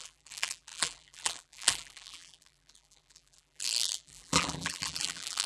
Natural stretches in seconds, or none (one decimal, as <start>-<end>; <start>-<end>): none